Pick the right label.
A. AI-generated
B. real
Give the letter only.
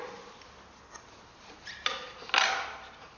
B